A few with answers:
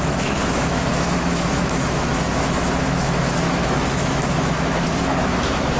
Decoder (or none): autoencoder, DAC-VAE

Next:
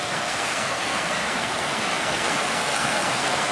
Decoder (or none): codec, SNAC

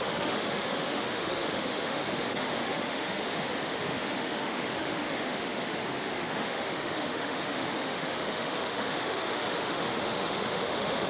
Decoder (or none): autoencoder, DAC-VAE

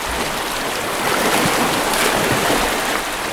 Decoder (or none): none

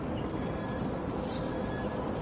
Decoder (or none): none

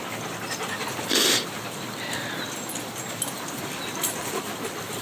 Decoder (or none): vocoder, BigVGAN v2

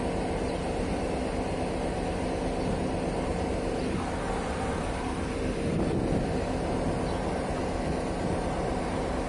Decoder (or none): none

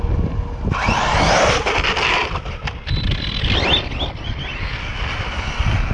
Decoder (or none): none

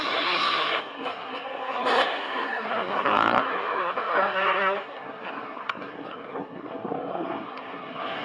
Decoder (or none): codec, SNAC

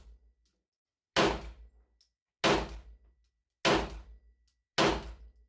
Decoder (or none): none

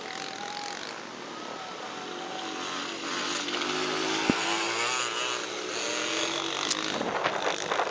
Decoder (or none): none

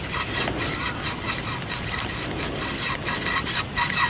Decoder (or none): none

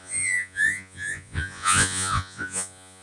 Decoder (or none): vocoder, Vocos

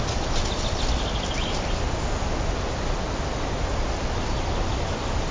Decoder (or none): none